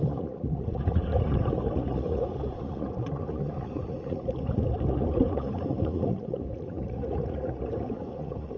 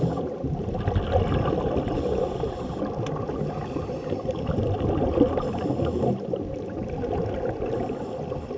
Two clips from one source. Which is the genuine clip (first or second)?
second